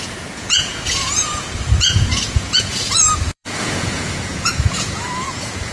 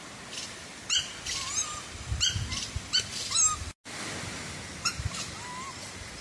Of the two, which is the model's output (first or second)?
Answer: first